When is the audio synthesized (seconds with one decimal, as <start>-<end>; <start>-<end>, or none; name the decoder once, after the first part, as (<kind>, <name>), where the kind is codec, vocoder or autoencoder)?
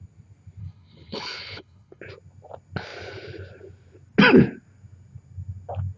0.6-2.0 (codec, HILCodec)